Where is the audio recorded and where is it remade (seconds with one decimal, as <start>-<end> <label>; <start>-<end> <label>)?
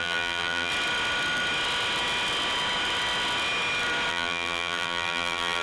0.0-0.7 remade; 0.7-4.1 recorded; 4.1-5.6 remade